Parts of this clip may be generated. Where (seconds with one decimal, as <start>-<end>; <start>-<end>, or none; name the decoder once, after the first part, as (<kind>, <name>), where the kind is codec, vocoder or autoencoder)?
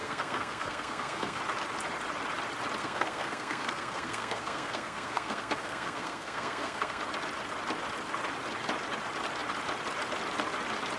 0.0-1.4 (codec, SNAC); 2.8-7.0